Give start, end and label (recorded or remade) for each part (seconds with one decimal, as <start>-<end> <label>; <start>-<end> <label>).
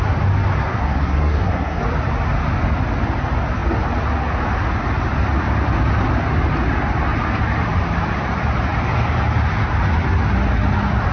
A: 0.0-0.7 recorded; 0.7-1.8 remade; 1.8-11.1 recorded